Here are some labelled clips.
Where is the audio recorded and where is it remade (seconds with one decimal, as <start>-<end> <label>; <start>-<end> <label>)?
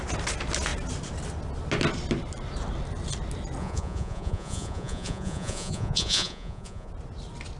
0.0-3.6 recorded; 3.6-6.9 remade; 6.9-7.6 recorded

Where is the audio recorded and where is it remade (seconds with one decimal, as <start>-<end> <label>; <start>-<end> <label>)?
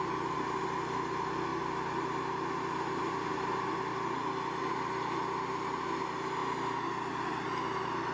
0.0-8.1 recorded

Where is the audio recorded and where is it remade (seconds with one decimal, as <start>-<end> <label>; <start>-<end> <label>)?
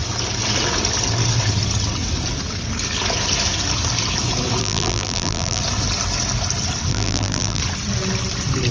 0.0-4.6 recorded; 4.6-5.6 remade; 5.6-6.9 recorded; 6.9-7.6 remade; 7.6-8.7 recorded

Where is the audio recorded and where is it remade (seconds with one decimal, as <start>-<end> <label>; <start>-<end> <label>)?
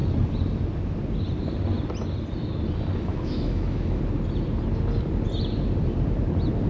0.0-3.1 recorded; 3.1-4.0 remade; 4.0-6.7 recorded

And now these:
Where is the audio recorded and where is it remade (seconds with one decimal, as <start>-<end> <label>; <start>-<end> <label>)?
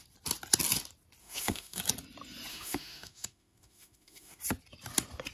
0.0-1.2 recorded; 1.2-1.8 remade; 1.8-2.5 recorded; 2.5-4.4 remade; 4.4-5.3 recorded